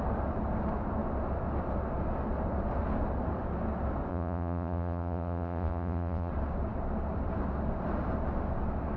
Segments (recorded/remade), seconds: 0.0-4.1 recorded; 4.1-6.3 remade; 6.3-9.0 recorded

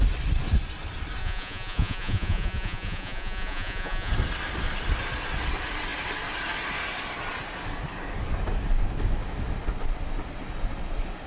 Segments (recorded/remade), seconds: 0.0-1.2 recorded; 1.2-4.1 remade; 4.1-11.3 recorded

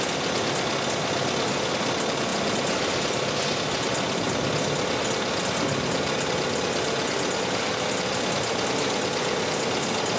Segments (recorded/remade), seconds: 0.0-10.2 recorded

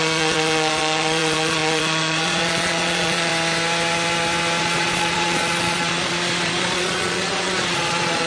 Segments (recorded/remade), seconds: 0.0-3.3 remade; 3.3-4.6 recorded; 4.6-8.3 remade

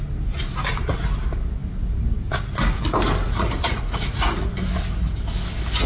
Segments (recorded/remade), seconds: 0.0-3.3 recorded; 3.3-4.4 remade; 4.4-5.9 recorded

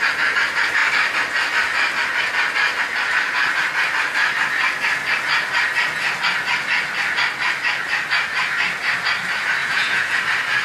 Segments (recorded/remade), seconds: 0.0-9.6 recorded; 9.6-10.2 remade; 10.2-10.6 recorded

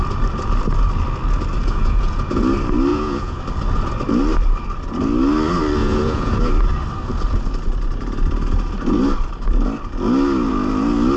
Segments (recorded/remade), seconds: 0.0-1.6 recorded; 1.6-2.4 remade; 2.4-2.9 recorded; 2.9-3.4 remade; 3.4-5.8 recorded; 5.8-6.4 remade; 6.4-11.2 recorded

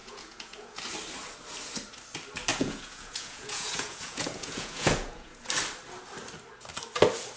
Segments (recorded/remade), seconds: 0.0-0.8 remade; 0.8-2.5 recorded; 2.5-5.4 remade; 5.4-7.4 recorded